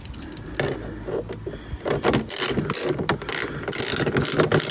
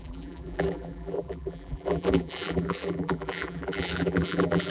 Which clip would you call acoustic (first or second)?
first